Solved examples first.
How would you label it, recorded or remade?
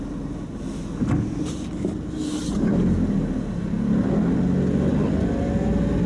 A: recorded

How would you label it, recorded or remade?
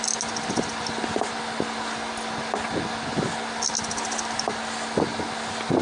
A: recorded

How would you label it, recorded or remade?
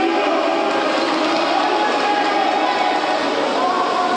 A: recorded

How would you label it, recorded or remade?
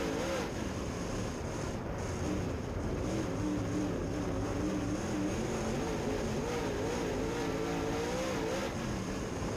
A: recorded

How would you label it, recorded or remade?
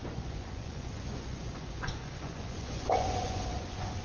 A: remade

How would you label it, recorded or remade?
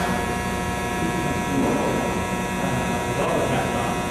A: remade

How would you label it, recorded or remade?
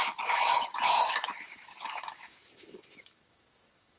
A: remade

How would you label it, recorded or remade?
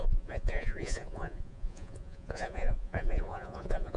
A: remade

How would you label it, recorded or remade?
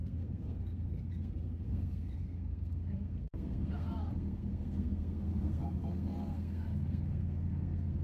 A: remade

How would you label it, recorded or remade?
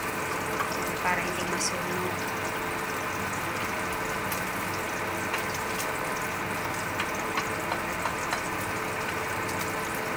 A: recorded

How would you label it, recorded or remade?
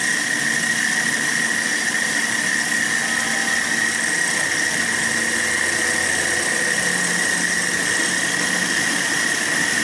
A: recorded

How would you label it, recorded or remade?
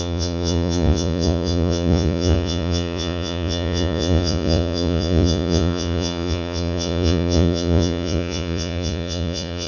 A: remade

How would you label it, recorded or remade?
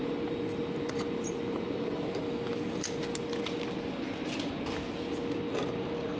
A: recorded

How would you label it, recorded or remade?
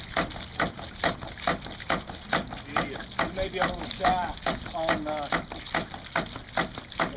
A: recorded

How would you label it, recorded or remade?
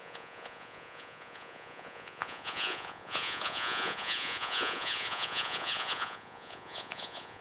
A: remade